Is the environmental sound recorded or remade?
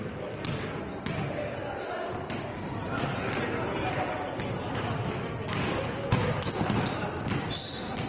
recorded